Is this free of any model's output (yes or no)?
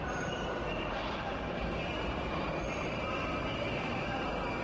no